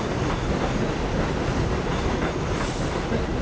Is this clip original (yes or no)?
yes